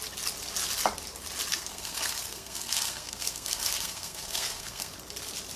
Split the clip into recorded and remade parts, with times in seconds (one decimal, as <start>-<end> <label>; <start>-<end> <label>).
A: 0.0-1.5 recorded; 1.5-4.9 remade; 4.9-5.6 recorded